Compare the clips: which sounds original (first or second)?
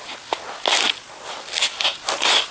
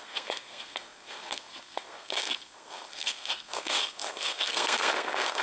first